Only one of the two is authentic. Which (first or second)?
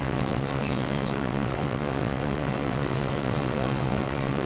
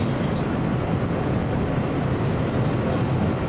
second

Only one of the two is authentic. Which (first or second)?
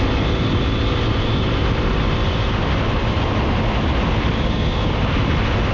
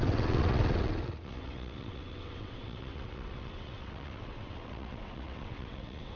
first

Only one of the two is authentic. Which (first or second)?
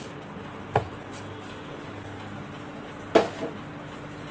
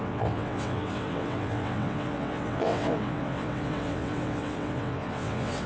first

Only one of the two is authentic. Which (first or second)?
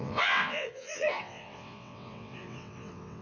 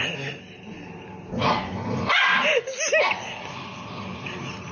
second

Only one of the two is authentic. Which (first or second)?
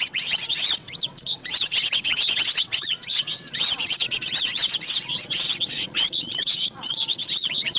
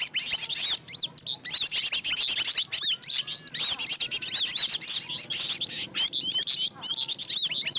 second